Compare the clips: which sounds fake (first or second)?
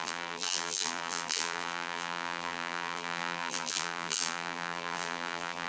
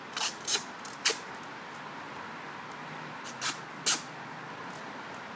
first